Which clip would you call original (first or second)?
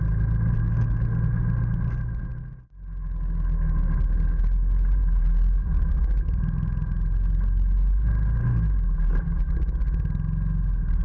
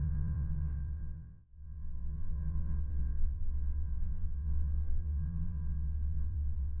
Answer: first